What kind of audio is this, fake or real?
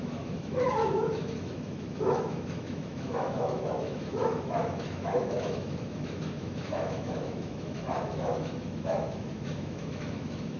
fake